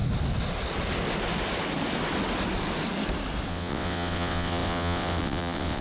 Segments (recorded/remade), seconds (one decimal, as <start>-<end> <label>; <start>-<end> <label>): 0.0-3.5 recorded; 3.5-5.8 remade